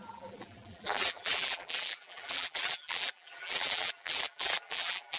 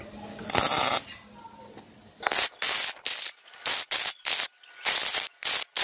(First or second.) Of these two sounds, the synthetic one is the first